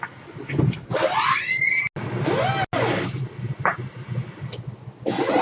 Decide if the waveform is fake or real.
real